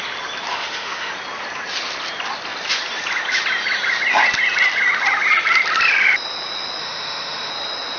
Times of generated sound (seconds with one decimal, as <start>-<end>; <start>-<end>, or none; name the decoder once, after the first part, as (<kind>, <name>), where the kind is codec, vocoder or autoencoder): 0.5-1.1 (autoencoder, DAC-VAE); 6.8-7.5

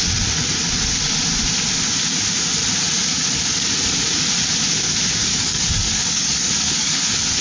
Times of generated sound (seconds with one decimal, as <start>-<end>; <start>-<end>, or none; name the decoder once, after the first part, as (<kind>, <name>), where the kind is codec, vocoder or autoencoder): 5.3-7.0 (codec, DAC)